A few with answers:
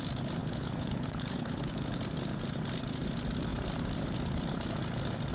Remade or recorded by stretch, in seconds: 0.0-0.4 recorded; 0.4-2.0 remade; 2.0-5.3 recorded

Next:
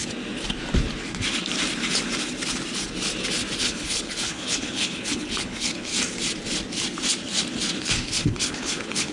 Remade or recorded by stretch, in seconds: 0.0-3.6 recorded; 3.6-5.9 remade; 5.9-7.8 recorded; 7.8-9.1 remade